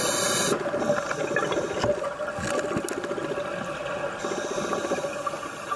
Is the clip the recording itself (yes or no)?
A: yes